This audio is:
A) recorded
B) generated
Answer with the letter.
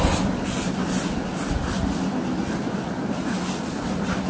A